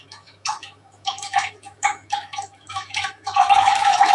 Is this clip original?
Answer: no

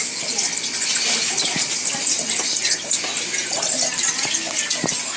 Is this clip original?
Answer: yes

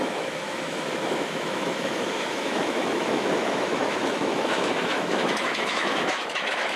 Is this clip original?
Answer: no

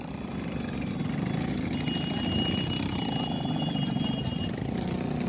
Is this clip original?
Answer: yes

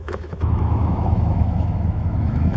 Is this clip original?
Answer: no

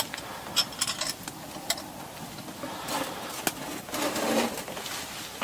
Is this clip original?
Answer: yes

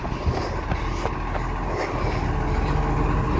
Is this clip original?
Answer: yes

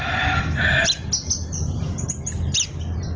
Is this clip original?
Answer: yes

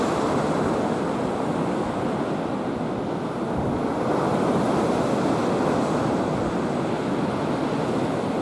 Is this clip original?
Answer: yes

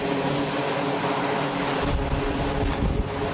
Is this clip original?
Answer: yes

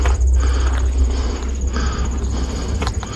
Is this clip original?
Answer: yes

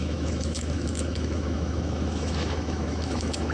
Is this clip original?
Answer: no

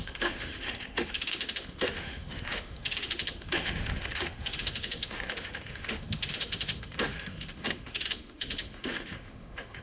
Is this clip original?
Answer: no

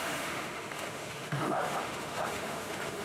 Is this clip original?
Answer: no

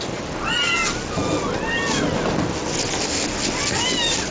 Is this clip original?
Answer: yes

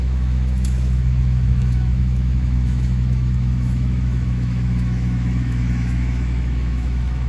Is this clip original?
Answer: no